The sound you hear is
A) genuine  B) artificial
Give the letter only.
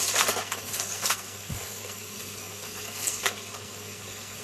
B